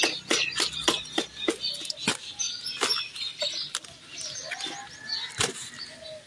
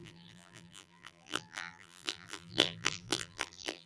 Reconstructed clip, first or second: second